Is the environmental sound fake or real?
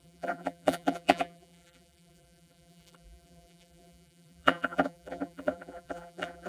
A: fake